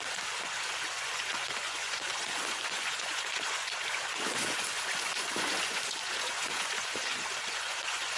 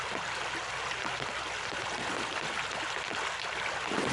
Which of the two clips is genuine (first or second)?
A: second